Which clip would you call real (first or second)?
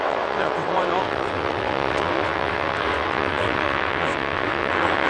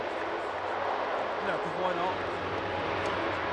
second